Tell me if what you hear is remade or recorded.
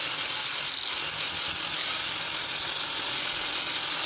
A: recorded